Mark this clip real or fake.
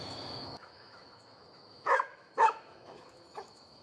fake